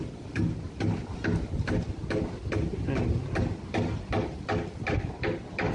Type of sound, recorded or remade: recorded